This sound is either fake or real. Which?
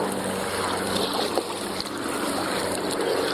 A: real